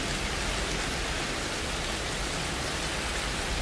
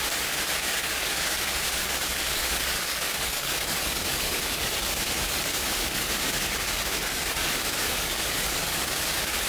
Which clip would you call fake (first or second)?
second